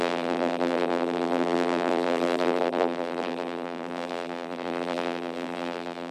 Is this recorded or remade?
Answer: remade